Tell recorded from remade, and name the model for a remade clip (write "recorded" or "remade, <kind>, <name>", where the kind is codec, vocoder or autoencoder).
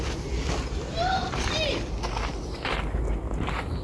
recorded